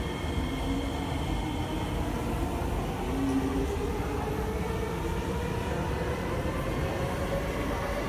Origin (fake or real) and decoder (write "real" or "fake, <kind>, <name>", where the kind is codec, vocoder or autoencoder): real